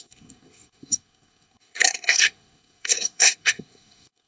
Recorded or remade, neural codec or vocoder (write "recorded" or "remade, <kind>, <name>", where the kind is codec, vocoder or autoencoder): remade, codec, SNAC